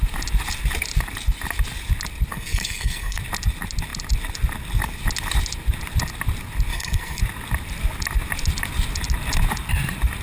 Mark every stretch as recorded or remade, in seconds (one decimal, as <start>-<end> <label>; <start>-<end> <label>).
0.0-2.3 recorded; 2.3-3.2 remade; 3.2-6.7 recorded; 6.7-7.2 remade; 7.2-10.2 recorded